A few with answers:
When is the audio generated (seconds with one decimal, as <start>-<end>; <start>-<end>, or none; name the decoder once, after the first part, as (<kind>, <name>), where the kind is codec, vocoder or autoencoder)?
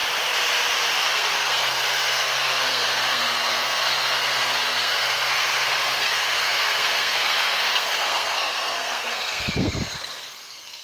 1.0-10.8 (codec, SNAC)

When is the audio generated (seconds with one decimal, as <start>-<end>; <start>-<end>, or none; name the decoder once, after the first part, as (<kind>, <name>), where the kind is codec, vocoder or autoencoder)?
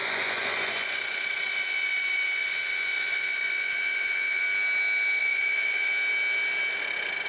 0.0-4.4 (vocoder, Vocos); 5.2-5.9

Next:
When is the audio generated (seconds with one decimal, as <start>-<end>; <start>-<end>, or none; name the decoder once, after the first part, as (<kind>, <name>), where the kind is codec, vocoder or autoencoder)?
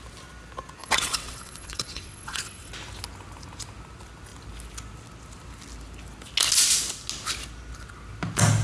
0.8-2.7 (vocoder, WaveNeXt)